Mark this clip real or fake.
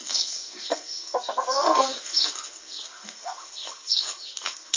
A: fake